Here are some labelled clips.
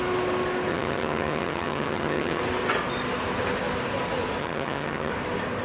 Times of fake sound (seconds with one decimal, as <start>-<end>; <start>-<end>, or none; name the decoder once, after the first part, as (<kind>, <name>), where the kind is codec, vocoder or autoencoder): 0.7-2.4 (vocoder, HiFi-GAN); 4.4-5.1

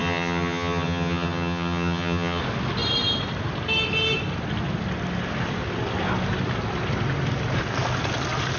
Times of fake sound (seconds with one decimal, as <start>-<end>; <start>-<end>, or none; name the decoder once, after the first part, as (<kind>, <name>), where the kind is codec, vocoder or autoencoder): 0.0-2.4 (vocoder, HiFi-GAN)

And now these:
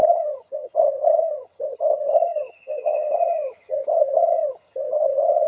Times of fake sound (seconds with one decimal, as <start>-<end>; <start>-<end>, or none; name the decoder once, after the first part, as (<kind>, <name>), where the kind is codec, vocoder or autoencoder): 0.0-5.5 (vocoder, HiFi-GAN)

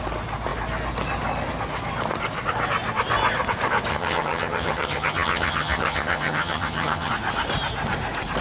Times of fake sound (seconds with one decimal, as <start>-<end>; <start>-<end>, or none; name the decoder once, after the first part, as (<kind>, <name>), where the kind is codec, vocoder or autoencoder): 3.9-7.1 (vocoder, HiFi-GAN)